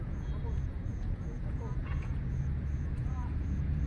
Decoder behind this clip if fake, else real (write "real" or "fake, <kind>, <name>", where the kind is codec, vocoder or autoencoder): fake, vocoder, Vocos